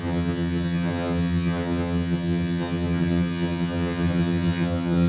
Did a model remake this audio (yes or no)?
yes